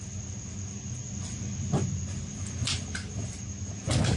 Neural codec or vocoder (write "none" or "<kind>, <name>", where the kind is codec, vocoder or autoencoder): none